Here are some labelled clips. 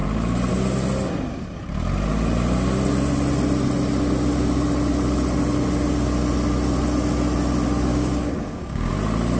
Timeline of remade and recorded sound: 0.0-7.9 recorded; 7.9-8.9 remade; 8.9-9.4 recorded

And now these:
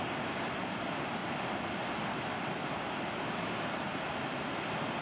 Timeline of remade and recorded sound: 0.0-5.0 recorded

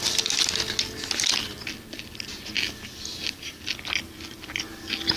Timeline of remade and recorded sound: 0.0-3.1 recorded; 3.1-3.6 remade; 3.6-5.2 recorded